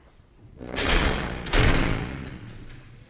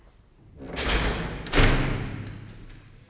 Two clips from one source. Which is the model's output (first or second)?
first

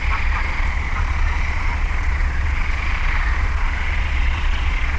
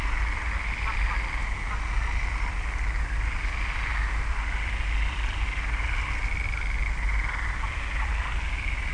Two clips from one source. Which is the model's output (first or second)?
first